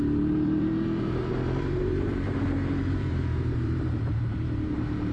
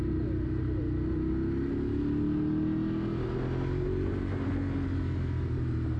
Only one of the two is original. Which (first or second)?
second